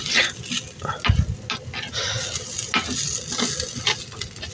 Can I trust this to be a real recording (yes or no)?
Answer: yes